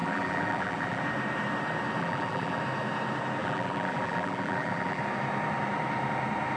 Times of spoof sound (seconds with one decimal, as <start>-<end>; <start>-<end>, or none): 0.0-1.0; 2.0-2.6; 3.4-5.0